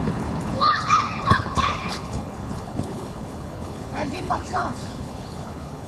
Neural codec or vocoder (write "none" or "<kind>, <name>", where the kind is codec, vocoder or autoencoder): codec, HILCodec